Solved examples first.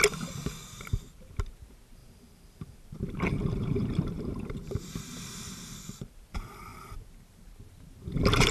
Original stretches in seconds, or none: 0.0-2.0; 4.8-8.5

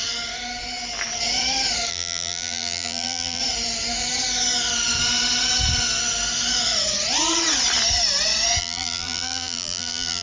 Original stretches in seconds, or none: 0.0-1.9; 3.4-8.6

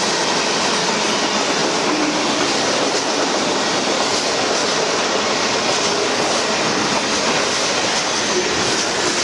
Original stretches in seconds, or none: 0.0-4.6; 5.6-9.2